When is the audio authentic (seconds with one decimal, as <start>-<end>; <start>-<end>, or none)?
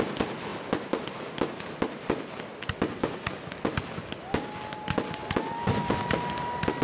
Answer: 0.0-6.8